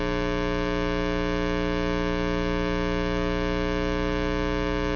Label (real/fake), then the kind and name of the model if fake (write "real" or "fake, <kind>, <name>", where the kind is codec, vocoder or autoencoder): real